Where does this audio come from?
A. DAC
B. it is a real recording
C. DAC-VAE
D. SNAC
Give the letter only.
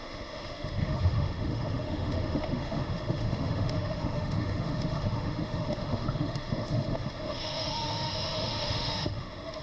C